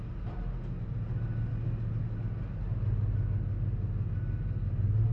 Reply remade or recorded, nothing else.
recorded